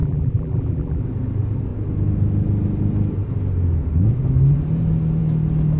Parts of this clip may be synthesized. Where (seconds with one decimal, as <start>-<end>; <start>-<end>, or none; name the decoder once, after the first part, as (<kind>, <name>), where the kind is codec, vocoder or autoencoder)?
0.0-1.0 (vocoder, BigVGAN v2)